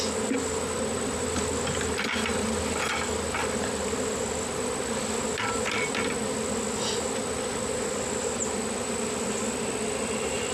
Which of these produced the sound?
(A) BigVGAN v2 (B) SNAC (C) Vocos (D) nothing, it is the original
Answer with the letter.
D